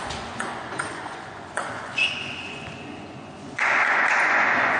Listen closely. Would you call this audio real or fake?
fake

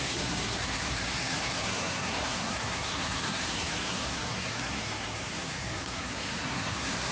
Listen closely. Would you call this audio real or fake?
fake